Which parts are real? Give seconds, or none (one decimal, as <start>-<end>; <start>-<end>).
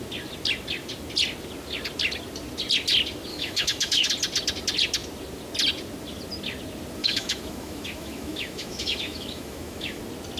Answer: 0.0-3.3; 4.1-7.0; 10.0-10.4